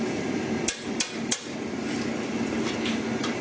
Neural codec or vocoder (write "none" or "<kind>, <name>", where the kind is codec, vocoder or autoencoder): none